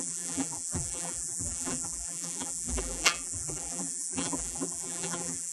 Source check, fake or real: fake